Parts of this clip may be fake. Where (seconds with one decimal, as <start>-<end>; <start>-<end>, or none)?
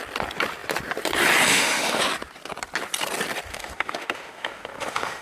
1.5-2.0; 3.5-5.2